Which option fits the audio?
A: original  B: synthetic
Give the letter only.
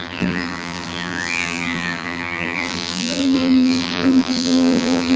B